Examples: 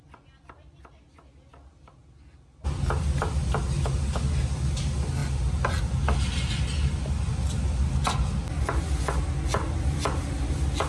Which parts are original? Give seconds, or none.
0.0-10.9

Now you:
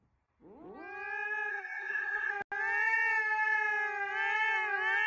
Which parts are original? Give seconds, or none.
0.0-1.5; 2.3-5.1

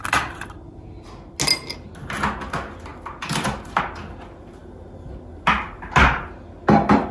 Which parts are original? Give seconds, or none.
0.0-2.9; 3.8-7.1

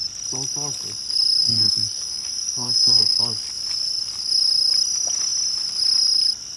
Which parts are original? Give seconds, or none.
0.0-1.4; 3.2-6.6

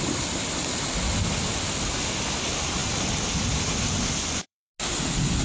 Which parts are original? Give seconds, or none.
0.0-4.2; 4.7-5.4

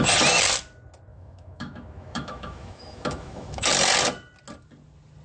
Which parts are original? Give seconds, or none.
0.0-1.1; 3.7-5.2